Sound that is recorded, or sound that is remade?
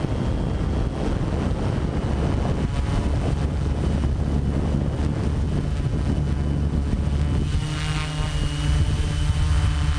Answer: recorded